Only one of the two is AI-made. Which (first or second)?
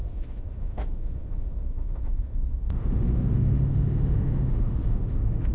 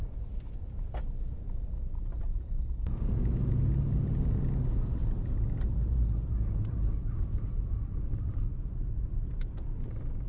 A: first